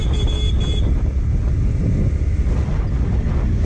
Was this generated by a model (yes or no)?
no